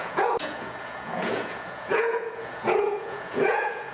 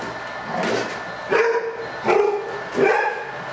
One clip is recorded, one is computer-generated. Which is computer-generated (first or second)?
first